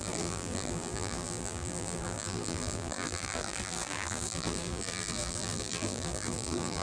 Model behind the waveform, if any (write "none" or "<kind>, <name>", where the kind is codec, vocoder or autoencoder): vocoder, BigVGAN v2